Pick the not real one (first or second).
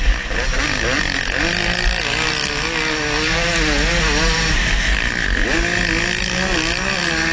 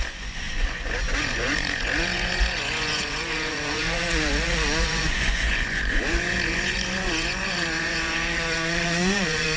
second